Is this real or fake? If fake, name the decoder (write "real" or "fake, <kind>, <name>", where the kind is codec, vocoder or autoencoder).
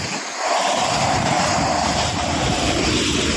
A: real